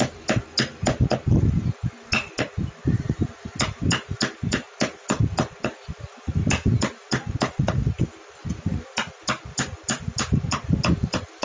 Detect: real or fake real